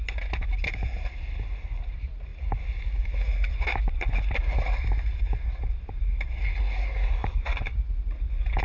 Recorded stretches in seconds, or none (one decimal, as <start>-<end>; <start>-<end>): 0.0-8.6